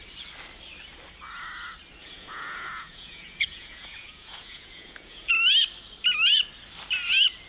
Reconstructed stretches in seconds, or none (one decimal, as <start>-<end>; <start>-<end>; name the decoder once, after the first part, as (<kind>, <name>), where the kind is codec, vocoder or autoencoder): 2.0-5.3 (vocoder, Vocos)